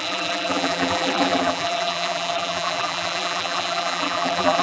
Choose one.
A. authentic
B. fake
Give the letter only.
B